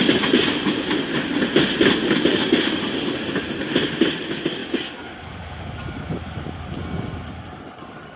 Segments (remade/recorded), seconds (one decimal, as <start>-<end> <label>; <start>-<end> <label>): 0.0-2.3 recorded; 2.3-2.8 remade; 2.8-8.2 recorded